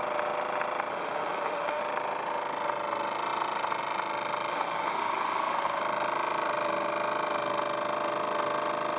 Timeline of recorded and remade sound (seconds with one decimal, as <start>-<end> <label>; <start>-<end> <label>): 0.0-0.9 recorded; 0.9-1.8 remade; 1.8-4.5 recorded; 4.5-5.8 remade; 5.8-9.0 recorded